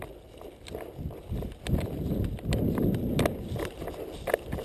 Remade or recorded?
recorded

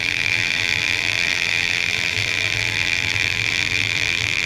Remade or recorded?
remade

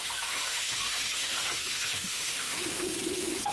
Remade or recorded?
remade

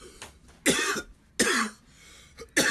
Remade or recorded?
recorded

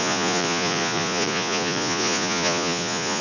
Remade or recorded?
remade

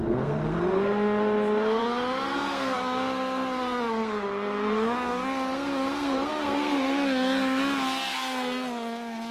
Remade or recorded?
remade